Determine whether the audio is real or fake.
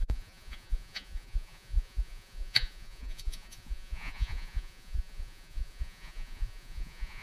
fake